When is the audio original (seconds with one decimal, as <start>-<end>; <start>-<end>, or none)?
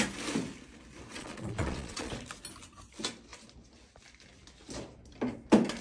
0.0-1.1; 2.1-5.8